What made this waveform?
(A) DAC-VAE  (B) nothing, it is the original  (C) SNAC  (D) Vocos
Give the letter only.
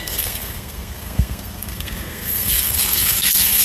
C